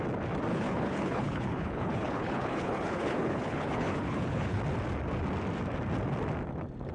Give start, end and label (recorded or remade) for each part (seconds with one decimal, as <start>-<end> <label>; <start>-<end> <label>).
0.0-0.5 recorded; 0.5-4.6 remade; 4.6-6.9 recorded